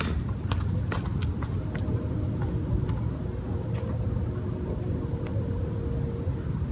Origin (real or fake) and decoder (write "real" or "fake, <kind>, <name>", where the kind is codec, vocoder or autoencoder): real